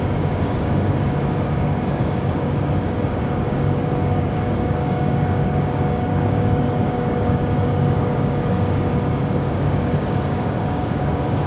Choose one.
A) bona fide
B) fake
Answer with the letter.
B